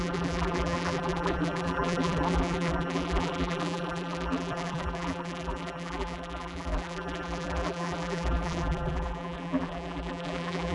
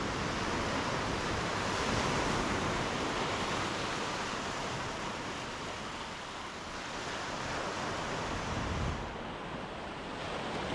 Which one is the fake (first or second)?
first